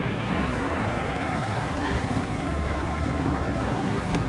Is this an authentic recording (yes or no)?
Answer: no